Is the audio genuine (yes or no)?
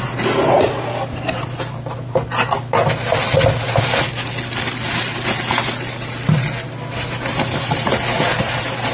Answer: yes